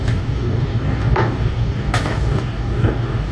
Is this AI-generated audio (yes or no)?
yes